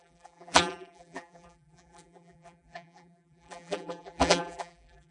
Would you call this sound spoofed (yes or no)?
yes